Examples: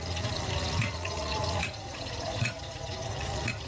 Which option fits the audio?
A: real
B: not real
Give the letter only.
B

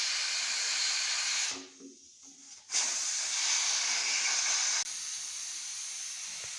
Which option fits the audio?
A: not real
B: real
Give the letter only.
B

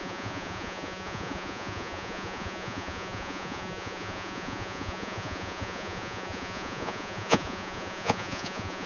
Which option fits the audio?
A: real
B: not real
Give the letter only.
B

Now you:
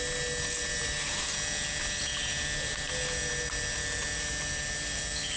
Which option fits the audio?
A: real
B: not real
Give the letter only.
A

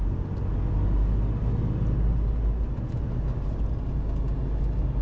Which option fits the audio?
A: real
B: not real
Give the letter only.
A